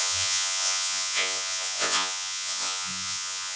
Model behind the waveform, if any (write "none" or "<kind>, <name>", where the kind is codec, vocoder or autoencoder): vocoder, Vocos